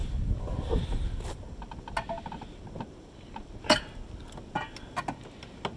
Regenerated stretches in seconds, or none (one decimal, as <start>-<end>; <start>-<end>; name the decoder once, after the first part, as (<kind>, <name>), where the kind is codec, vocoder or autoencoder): none